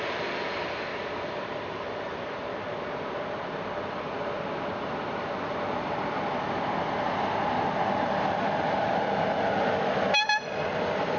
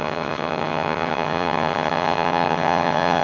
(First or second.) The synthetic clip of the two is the second